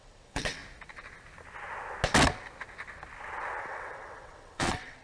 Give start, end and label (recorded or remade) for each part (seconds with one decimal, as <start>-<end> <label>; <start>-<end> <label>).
0.0-0.6 remade; 0.6-3.6 recorded; 3.6-5.0 remade